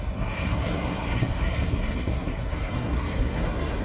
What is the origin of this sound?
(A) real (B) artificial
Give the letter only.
B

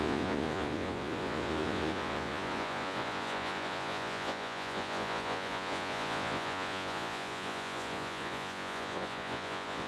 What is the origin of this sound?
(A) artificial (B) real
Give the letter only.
A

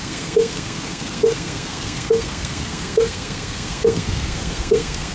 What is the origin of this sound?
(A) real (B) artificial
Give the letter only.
B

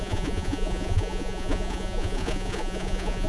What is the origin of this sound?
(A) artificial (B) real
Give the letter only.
A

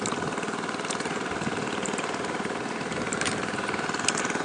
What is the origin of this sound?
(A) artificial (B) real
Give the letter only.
A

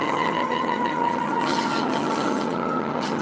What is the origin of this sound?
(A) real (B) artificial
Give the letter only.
B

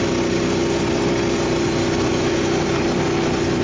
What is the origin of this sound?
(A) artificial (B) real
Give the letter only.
B